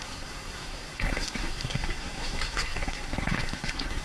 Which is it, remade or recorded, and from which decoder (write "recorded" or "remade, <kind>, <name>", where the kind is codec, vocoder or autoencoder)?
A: remade, codec, SNAC